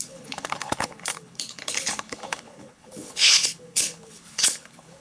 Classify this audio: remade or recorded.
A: remade